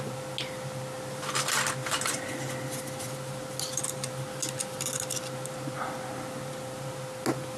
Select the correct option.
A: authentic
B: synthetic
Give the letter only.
A